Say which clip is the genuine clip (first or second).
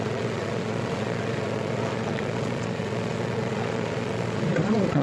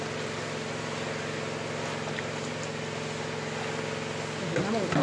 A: second